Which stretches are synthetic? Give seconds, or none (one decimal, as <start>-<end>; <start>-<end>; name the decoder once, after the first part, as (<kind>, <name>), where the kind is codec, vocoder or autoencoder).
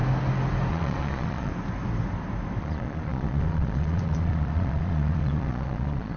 0.7-1.5 (vocoder, Vocos); 2.6-6.2